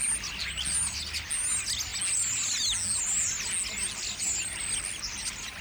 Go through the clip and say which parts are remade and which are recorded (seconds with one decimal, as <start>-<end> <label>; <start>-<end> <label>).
0.0-5.6 recorded